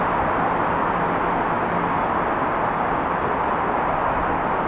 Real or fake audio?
real